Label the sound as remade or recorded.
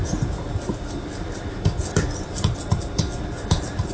recorded